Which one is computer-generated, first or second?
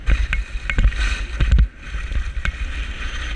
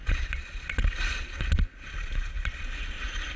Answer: second